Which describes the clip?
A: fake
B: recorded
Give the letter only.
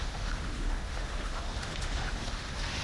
A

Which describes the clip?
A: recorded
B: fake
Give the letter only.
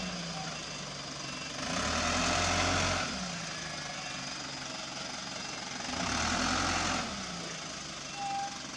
A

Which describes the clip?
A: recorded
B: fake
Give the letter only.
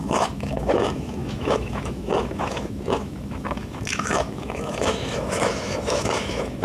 B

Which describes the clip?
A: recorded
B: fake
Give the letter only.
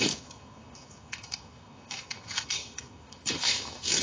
B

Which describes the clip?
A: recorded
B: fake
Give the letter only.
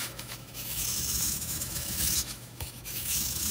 B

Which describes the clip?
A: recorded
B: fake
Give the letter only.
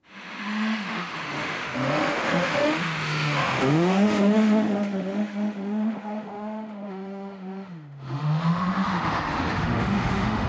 B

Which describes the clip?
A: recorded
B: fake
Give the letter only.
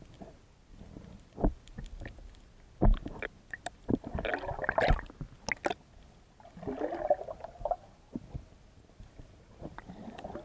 A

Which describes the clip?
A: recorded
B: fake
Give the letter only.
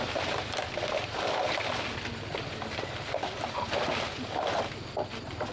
A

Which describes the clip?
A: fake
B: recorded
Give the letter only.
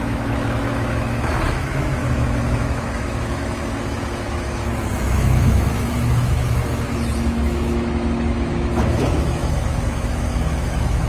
A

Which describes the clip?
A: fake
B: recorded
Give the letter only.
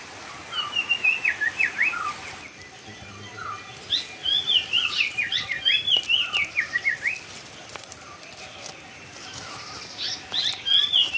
B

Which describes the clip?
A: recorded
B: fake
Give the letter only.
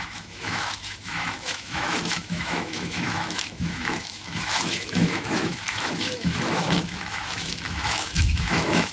B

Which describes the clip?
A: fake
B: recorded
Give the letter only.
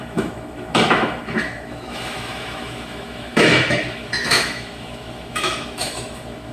A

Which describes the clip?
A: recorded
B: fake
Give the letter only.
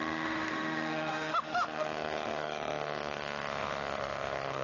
B